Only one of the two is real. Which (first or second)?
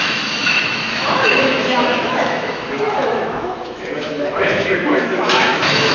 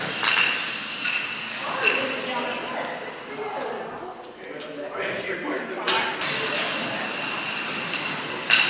second